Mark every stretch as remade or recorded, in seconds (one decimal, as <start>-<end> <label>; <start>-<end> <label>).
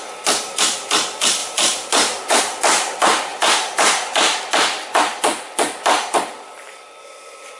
0.0-1.4 recorded; 1.4-2.4 remade; 2.4-3.3 recorded; 3.3-4.4 remade; 4.4-7.6 recorded